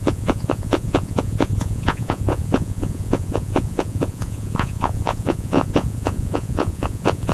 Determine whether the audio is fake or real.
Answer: fake